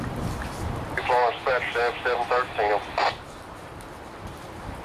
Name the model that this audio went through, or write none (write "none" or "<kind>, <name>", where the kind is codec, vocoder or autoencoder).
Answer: none